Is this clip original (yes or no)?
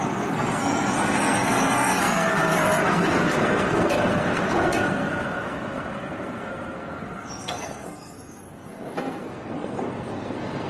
no